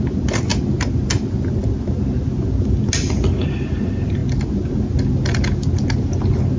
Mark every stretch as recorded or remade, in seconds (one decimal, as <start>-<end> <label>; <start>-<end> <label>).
0.0-6.6 recorded